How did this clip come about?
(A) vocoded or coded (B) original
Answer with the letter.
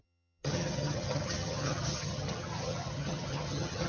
A